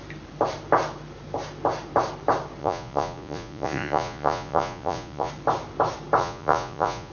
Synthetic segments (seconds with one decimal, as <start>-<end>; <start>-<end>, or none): 2.6-5.3; 6.2-7.1